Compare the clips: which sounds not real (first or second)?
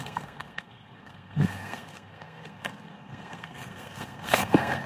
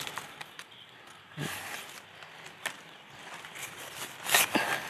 first